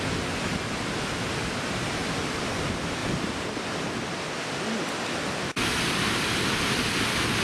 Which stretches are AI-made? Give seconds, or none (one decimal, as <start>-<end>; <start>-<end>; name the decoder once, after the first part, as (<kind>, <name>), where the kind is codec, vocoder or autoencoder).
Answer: none